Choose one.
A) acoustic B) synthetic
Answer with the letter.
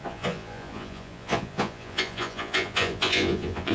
B